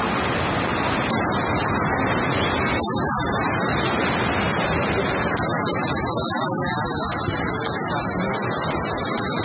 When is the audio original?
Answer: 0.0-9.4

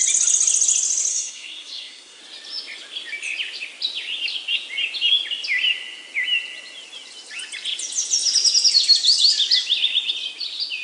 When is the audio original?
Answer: 0.0-1.1; 2.2-10.8

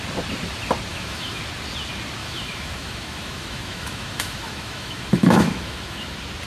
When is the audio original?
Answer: 0.0-0.9; 1.4-2.2; 6.1-6.5